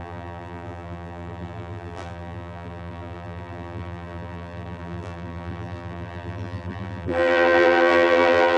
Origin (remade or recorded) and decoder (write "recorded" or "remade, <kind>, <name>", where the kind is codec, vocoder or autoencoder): remade, vocoder, BigVGAN v2